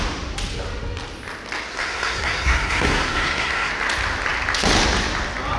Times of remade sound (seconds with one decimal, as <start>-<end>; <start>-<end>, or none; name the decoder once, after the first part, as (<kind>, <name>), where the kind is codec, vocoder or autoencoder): 1.7-3.7 (codec, SNAC)

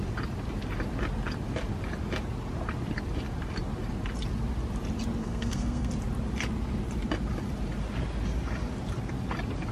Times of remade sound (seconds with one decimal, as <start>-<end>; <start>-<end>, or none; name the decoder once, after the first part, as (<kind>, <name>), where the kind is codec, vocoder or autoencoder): 5.2-5.9 (codec, SNAC)